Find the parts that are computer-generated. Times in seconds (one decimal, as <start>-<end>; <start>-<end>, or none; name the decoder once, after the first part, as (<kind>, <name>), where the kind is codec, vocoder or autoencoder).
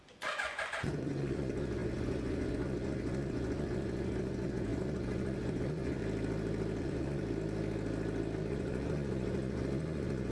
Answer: 0.0-6.0 (vocoder, Vocos); 6.8-7.2; 8.5-10.3